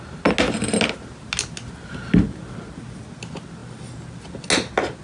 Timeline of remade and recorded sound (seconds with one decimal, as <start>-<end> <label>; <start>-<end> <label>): 0.0-5.0 recorded